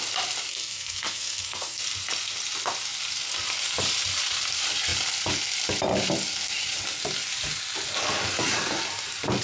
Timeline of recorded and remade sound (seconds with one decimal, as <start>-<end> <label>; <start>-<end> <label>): 0.0-0.5 recorded; 0.5-1.8 remade; 1.8-9.4 recorded